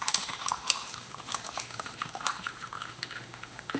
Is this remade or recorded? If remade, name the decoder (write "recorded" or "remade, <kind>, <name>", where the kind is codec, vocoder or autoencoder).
remade, autoencoder, DAC-VAE